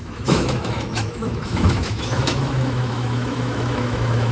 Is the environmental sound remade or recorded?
remade